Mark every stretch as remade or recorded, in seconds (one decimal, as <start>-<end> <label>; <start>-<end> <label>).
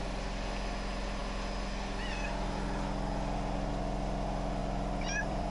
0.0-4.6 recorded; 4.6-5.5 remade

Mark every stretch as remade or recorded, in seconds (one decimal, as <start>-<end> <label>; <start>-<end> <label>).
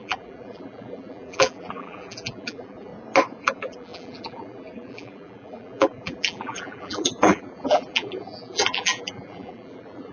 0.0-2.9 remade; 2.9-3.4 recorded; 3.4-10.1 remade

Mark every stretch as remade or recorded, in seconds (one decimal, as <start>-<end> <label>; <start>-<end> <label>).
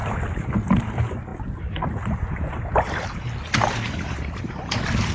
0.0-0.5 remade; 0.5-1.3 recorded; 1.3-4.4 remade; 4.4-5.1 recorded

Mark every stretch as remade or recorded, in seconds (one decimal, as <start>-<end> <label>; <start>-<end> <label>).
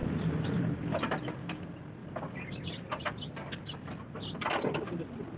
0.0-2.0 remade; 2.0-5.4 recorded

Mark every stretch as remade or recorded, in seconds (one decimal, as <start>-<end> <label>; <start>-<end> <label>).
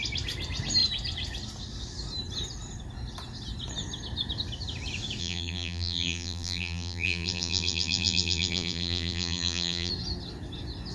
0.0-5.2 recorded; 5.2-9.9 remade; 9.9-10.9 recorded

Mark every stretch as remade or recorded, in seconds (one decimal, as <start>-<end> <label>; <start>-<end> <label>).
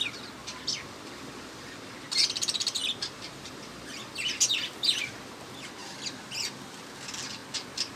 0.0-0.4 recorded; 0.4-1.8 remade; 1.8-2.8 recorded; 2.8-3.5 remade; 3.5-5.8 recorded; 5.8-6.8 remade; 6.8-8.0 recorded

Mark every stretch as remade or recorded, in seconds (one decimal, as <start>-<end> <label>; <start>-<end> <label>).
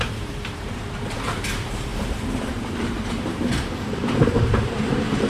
0.0-5.3 remade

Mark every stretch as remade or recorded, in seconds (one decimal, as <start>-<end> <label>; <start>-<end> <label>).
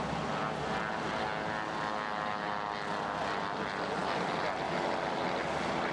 0.0-5.9 recorded